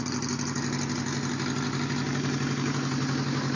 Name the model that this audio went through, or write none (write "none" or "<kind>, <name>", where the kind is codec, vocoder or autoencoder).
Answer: none